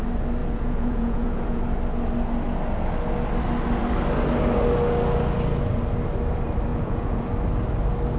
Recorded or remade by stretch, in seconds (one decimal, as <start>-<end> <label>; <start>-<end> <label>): 0.0-0.4 recorded; 0.4-1.6 remade; 1.6-6.7 recorded; 6.7-7.3 remade; 7.3-8.2 recorded